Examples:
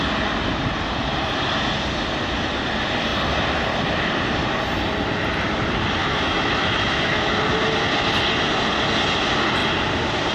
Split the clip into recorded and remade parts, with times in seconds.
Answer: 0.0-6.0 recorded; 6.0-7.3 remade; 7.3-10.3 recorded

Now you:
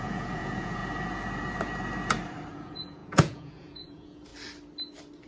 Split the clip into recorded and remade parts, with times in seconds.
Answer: 0.0-0.8 remade; 0.8-2.5 recorded; 2.5-4.3 remade; 4.3-5.3 recorded